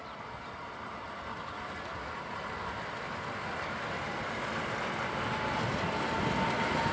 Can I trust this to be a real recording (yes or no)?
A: yes